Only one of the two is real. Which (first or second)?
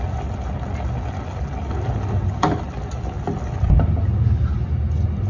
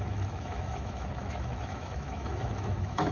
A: first